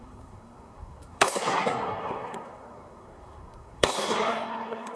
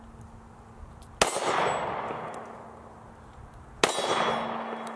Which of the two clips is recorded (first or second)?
second